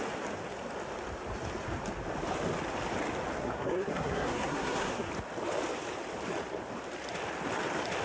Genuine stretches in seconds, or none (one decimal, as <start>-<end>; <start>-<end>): 0.0-3.4; 5.1-8.0